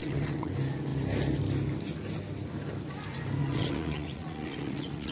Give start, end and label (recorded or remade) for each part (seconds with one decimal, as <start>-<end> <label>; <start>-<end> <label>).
0.0-0.5 remade; 0.5-3.4 recorded; 3.4-5.1 remade